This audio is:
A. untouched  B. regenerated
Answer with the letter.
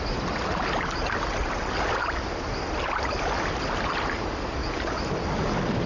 A